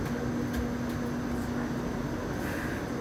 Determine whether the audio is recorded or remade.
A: recorded